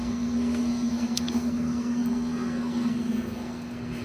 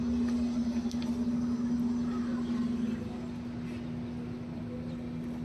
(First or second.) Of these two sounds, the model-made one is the first